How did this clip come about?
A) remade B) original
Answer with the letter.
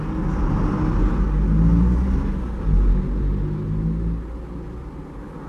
B